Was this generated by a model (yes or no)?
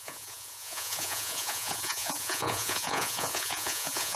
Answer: yes